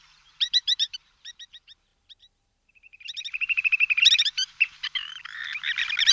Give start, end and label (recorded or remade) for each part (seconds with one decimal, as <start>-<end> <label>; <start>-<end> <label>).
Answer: 0.0-5.4 remade; 5.4-6.1 recorded